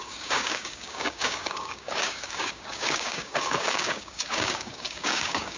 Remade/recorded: remade